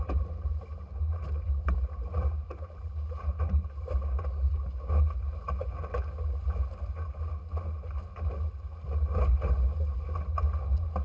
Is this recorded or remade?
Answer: recorded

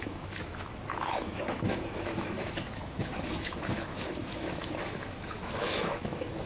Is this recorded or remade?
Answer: remade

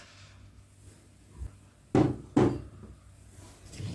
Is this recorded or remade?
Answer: recorded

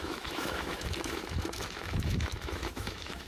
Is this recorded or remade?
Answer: remade